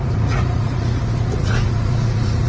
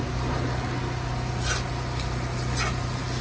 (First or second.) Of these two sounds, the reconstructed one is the first